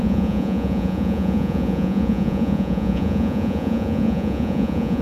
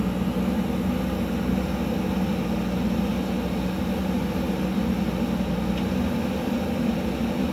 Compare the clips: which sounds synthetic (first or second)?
first